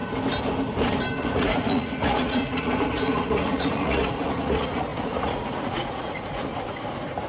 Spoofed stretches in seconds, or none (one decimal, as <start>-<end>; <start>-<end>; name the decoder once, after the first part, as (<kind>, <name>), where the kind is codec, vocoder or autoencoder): 1.2-6.5 (vocoder, Vocos)